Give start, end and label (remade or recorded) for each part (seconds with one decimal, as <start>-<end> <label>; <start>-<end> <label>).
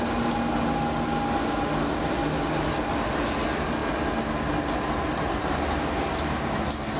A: 0.0-7.0 recorded